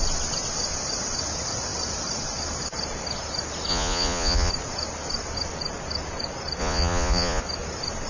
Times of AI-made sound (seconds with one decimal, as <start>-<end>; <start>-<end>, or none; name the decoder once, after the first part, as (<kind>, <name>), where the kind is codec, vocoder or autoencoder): 3.7-4.5 (vocoder, Vocos); 6.6-7.4

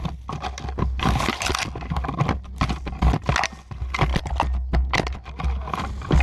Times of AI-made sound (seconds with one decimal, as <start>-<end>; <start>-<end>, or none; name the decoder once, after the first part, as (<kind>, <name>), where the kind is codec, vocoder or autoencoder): none